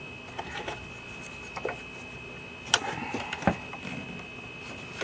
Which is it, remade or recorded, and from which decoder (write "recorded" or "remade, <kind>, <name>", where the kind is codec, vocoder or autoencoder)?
recorded